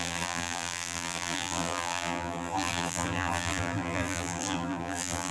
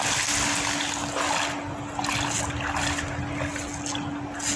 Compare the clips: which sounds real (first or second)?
second